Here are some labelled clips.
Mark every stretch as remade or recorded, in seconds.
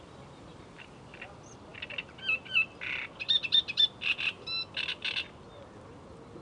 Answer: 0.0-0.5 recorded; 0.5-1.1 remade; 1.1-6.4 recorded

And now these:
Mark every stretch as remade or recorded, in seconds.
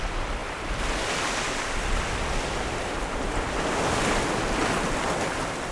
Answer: 0.0-5.7 recorded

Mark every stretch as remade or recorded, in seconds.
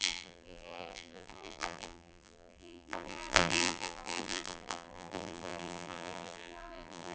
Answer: 0.0-7.1 remade